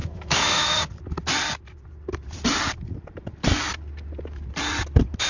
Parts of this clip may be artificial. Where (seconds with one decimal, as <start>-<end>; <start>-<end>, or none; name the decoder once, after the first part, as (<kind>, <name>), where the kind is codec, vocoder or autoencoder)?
0.0-0.8 (autoencoder, DAC-VAE)